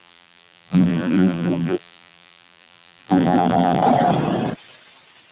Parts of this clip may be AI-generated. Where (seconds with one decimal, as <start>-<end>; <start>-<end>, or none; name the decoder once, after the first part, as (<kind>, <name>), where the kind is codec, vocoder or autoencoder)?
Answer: 0.0-3.8 (vocoder, BigVGAN v2)